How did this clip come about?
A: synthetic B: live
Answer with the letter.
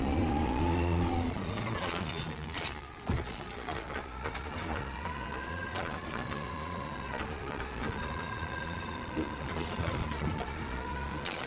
A